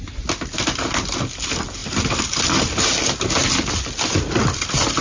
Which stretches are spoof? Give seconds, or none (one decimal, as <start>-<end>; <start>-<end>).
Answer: none